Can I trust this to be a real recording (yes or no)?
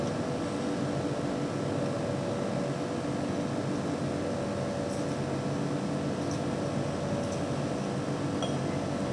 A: yes